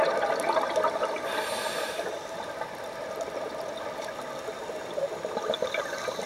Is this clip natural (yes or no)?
yes